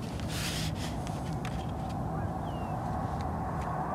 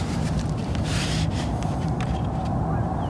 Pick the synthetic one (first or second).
second